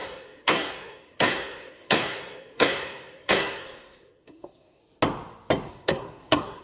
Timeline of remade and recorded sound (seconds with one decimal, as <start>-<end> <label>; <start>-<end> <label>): 0.0-4.8 remade; 4.8-5.7 recorded; 5.7-6.6 remade